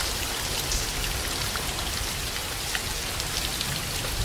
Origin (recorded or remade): recorded